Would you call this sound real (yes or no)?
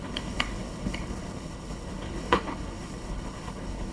no